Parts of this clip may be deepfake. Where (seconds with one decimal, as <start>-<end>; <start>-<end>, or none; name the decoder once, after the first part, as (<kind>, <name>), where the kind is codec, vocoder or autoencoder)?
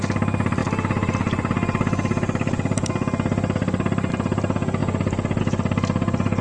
none